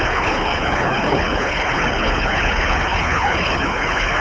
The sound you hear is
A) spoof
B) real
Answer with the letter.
A